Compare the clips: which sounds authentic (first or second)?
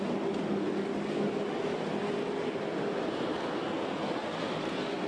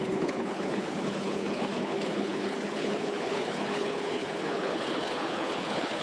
first